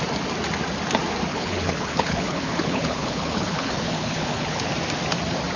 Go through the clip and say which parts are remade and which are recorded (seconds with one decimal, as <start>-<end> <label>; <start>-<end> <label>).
0.0-1.3 recorded; 1.3-4.7 remade; 4.7-5.6 recorded